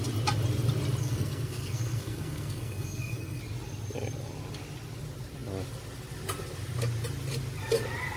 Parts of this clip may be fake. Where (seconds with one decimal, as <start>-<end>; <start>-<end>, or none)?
1.0-3.4